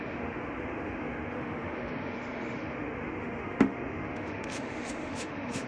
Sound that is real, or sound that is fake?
fake